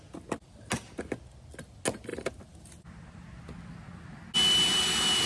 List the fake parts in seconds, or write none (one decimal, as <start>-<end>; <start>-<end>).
none